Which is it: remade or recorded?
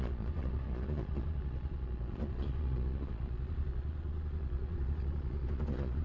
remade